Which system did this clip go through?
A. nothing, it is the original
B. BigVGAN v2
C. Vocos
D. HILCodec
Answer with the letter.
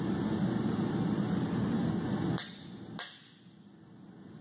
A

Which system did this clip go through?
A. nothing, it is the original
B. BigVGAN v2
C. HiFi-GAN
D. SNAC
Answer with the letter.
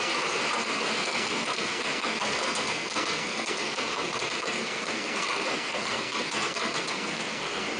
D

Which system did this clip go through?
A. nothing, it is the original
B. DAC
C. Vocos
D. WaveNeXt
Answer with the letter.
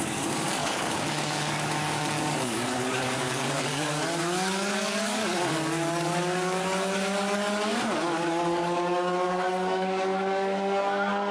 B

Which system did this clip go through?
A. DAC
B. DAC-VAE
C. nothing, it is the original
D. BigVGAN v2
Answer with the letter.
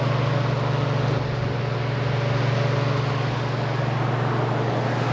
C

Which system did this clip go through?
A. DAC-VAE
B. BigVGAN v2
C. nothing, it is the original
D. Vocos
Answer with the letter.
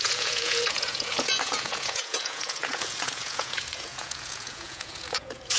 D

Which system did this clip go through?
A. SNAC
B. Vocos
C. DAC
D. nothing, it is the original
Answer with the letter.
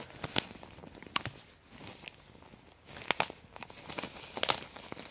D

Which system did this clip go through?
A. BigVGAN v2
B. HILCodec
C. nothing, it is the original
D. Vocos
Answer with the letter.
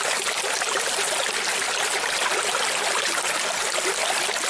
C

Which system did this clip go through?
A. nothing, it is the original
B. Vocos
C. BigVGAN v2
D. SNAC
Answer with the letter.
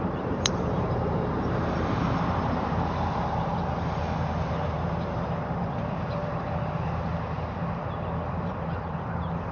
C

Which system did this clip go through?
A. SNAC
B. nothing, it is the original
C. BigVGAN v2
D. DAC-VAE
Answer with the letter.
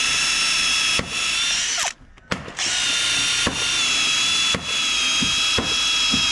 B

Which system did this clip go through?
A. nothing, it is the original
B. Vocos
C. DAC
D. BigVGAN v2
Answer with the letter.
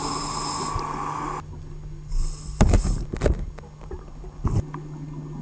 A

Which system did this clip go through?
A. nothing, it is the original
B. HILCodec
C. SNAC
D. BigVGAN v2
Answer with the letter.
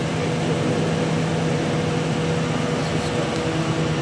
A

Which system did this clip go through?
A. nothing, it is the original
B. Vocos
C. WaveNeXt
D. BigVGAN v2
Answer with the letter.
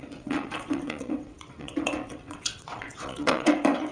C